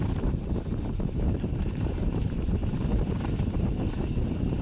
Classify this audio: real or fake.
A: fake